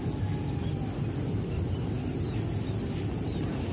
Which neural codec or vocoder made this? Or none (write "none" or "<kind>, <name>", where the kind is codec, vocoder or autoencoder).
none